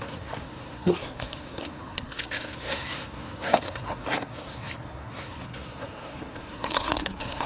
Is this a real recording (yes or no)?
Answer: no